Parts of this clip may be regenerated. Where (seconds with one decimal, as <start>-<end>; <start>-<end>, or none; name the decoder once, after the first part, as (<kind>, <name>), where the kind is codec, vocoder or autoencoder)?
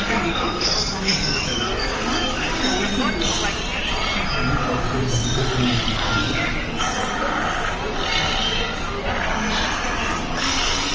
0.0-2.9 (codec, DAC); 5.4-7.0; 10.3-10.9